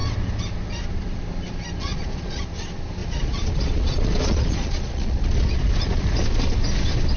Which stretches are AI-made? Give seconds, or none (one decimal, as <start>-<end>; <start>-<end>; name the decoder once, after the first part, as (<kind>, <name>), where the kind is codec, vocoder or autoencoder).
1.8-2.4 (vocoder, Vocos); 3.0-6.2